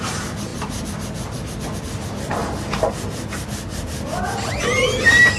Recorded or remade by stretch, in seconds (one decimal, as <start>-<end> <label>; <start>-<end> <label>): 0.0-5.4 recorded